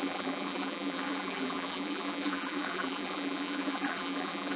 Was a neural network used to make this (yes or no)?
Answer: yes